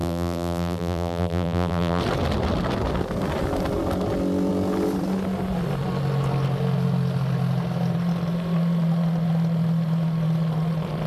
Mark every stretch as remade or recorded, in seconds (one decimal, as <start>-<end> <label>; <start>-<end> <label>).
0.0-2.0 remade; 2.0-11.1 recorded